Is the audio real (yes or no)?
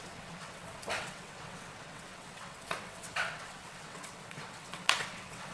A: no